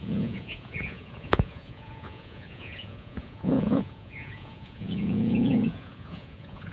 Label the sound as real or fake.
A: fake